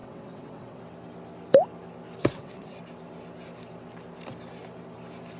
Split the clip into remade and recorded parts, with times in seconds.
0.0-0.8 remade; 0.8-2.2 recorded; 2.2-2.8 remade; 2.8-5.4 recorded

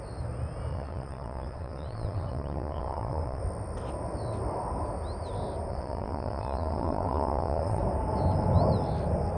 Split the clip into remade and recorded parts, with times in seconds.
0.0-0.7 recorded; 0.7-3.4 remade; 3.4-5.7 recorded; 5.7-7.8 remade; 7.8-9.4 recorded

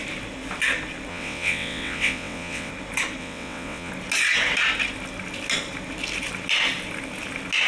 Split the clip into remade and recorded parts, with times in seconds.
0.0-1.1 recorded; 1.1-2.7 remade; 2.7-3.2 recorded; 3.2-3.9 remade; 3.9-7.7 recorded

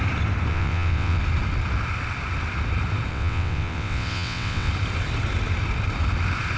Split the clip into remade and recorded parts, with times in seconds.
0.0-0.5 recorded; 0.5-1.2 remade; 1.2-3.1 recorded; 3.1-4.7 remade; 4.7-6.6 recorded

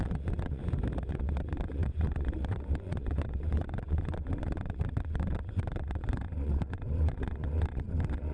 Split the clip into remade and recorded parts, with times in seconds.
0.0-0.6 remade; 0.6-1.1 recorded; 1.1-8.3 remade